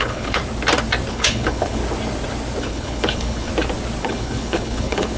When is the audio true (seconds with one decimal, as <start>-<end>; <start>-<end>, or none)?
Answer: 0.4-1.1; 1.8-2.6; 3.5-4.0